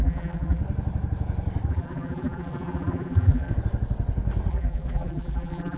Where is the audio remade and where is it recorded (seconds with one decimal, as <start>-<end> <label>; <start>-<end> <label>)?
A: 0.0-0.6 remade; 0.6-1.7 recorded; 1.7-3.5 remade; 3.5-4.5 recorded; 4.5-5.8 remade